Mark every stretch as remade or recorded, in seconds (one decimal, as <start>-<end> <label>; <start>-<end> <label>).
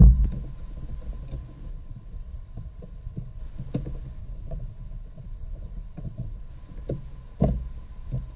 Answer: 0.0-1.7 recorded; 1.7-3.4 remade; 3.4-4.2 recorded; 4.2-6.5 remade; 6.5-8.4 recorded